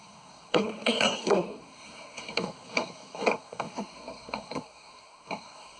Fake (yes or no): yes